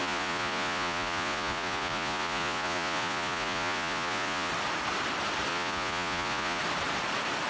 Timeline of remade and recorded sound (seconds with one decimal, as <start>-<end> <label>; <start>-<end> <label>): 0.0-4.5 remade; 4.5-5.5 recorded; 5.5-6.6 remade; 6.6-7.5 recorded